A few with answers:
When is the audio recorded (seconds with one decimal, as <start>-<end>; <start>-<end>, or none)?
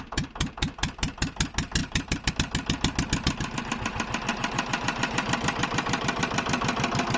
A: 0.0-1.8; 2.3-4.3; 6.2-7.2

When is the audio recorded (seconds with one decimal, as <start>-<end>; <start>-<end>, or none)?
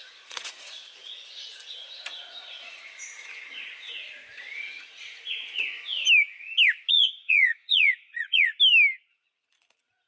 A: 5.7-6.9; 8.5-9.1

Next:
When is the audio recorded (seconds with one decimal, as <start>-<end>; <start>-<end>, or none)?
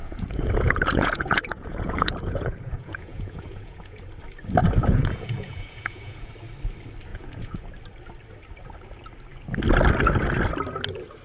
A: 4.0-4.6; 6.3-7.1; 7.7-11.2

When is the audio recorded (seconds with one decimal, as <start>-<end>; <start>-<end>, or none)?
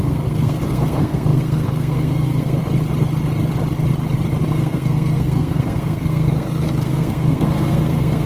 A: 2.6-4.5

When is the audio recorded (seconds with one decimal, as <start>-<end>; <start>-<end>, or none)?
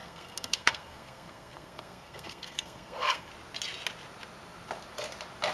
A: 3.3-5.5